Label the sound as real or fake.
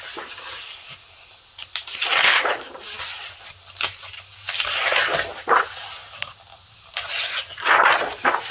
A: real